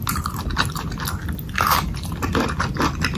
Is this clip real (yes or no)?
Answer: yes